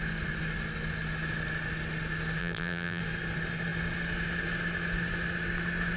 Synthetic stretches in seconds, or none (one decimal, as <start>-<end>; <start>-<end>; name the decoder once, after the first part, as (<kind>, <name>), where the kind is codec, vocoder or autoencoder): 2.4-3.0 (vocoder, BigVGAN v2)